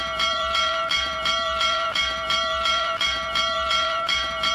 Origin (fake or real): fake